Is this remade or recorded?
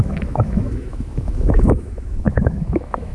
remade